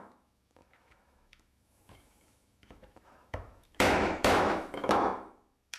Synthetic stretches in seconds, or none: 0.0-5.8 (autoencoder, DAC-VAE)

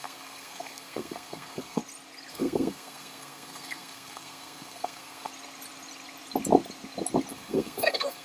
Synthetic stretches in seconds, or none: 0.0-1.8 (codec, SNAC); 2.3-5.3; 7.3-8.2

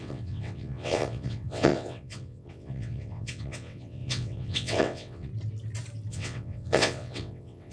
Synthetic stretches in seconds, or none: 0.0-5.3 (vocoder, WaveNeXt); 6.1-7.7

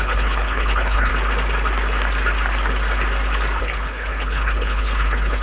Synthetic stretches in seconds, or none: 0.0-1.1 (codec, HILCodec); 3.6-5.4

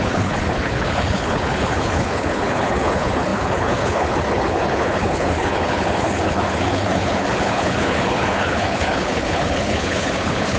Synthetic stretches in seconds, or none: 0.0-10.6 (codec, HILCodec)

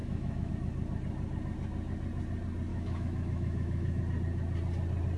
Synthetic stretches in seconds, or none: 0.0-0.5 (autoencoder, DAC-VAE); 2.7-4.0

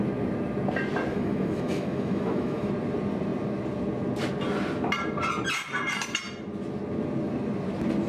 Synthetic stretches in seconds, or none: 1.1-2.7 (autoencoder, DAC-VAE)

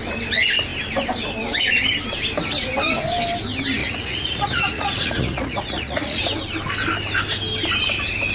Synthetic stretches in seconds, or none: 3.8-6.2 (vocoder, Vocos)